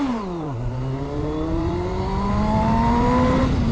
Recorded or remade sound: remade